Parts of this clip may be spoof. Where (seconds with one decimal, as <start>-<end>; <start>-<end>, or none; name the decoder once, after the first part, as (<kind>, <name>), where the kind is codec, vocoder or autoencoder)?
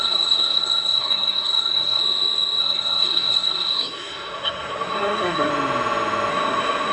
0.0-2.0 (codec, SNAC); 2.6-5.5; 6.3-6.9